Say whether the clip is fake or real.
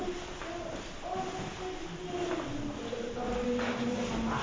real